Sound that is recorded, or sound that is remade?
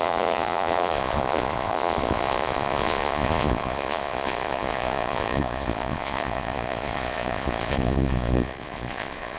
remade